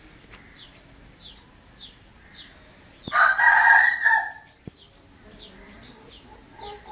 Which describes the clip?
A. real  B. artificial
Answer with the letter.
A